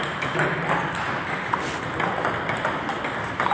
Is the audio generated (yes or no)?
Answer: no